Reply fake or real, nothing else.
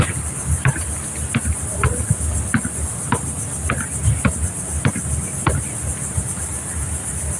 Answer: real